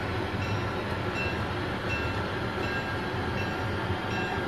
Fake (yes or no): no